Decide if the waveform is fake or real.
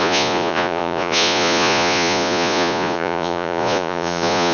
fake